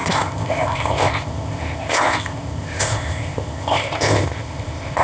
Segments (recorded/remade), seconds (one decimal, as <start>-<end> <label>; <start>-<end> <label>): 0.0-5.0 remade